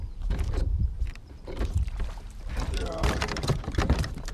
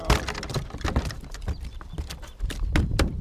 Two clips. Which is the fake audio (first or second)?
first